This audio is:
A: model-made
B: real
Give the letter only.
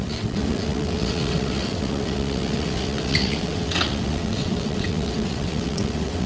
A